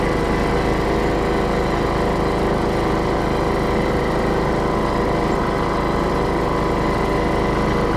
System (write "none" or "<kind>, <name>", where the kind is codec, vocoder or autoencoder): none